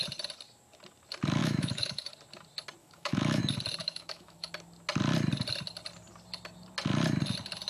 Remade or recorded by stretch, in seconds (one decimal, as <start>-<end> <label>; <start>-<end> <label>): 0.0-1.4 recorded; 1.4-2.1 remade; 2.1-2.8 recorded; 2.8-3.4 remade; 3.4-3.8 recorded; 3.8-4.5 remade; 4.5-7.7 recorded